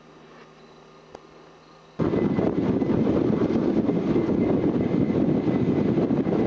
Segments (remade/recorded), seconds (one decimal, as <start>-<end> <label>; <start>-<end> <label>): 0.0-6.5 recorded